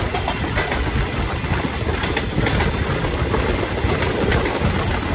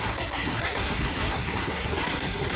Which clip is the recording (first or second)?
first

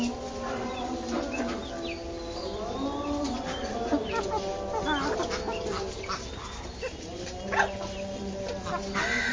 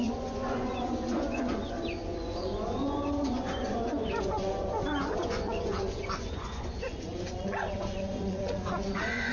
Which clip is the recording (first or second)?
first